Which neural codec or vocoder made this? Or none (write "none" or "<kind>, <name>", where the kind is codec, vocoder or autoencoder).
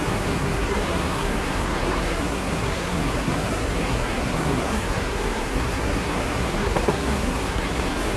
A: codec, SNAC